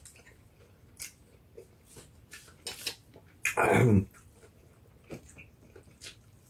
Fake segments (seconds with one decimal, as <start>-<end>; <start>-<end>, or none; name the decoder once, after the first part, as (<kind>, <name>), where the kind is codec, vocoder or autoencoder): none